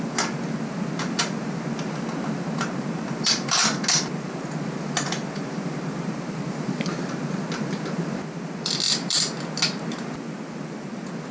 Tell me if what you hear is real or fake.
real